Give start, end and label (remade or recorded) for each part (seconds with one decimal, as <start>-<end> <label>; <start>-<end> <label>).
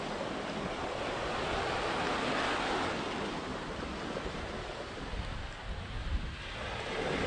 0.0-7.3 recorded